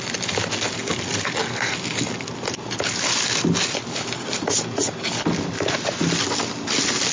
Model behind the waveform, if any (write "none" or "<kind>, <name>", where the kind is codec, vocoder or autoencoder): none